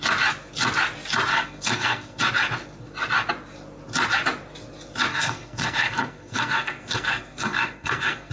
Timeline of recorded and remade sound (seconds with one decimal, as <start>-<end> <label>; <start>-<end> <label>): 0.0-1.3 recorded; 1.3-2.2 remade; 2.2-5.1 recorded; 5.1-8.3 remade